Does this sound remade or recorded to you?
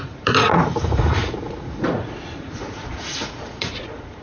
remade